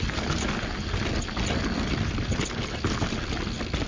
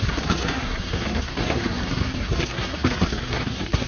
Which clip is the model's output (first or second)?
second